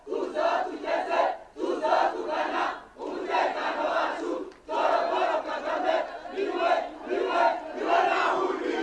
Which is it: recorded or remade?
recorded